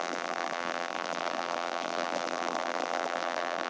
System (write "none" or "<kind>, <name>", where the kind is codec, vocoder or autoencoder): vocoder, BigVGAN v2